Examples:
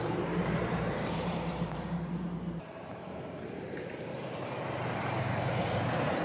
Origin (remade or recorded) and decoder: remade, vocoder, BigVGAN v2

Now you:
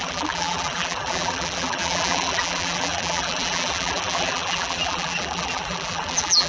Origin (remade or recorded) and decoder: remade, vocoder, BigVGAN v2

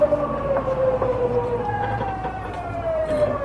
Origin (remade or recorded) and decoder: remade, vocoder, BigVGAN v2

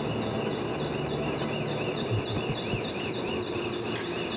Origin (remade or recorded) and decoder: recorded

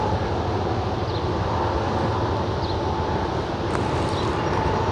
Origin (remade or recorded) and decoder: recorded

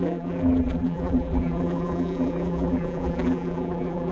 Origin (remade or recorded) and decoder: remade, vocoder, BigVGAN v2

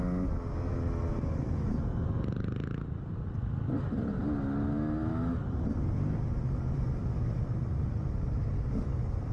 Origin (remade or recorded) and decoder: recorded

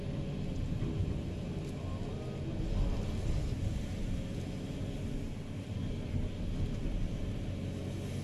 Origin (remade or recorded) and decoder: recorded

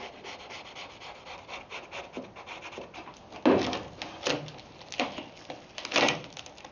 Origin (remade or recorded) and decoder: recorded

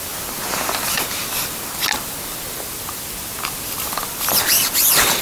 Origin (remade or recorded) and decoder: recorded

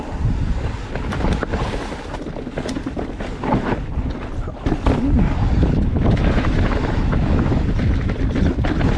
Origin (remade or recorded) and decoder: recorded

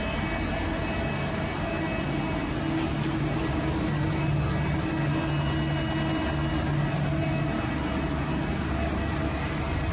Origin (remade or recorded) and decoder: recorded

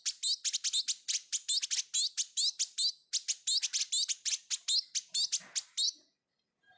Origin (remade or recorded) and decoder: recorded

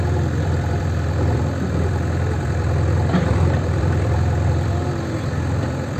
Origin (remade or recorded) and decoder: remade, vocoder, BigVGAN v2